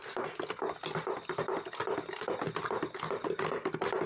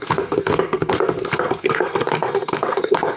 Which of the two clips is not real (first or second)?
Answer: second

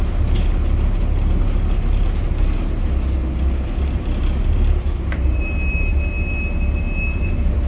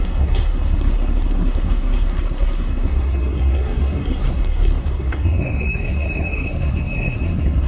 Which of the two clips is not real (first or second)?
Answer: second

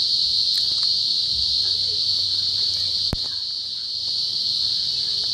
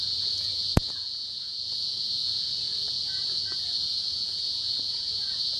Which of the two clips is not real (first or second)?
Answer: second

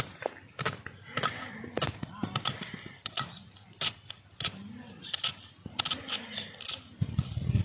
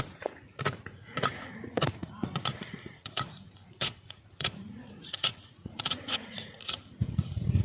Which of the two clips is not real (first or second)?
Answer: second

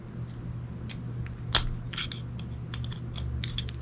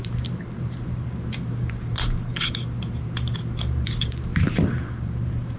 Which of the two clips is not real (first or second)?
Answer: second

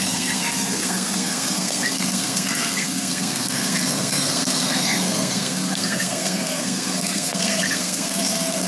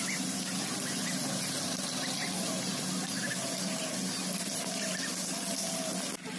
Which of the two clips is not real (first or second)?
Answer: first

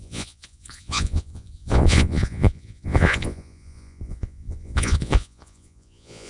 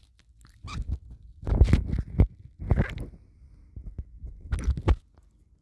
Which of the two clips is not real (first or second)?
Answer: first